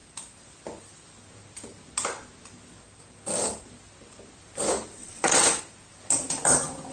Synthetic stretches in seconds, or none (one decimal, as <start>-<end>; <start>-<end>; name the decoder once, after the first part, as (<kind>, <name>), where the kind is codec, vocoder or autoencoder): 5.0-5.6 (vocoder, WaveNeXt)

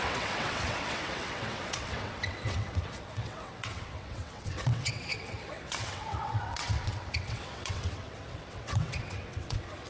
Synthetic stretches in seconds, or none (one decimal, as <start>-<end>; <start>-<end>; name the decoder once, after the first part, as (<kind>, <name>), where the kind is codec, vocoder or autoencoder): 0.0-9.9 (vocoder, WaveNeXt)